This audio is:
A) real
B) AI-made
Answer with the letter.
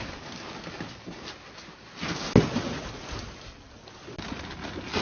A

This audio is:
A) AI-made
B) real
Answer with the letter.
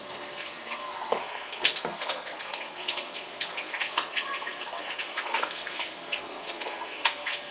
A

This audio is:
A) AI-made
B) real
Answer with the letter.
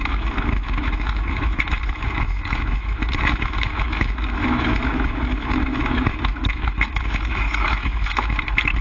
A